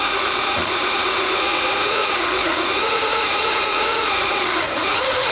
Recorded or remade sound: remade